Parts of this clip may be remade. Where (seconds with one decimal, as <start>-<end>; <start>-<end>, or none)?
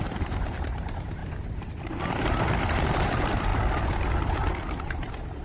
0.0-1.2; 2.1-3.5; 4.8-5.4